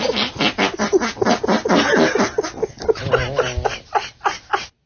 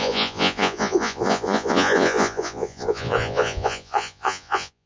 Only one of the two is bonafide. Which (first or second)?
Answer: first